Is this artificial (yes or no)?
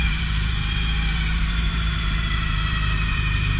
yes